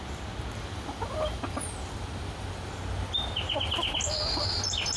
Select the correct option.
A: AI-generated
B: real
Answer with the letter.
B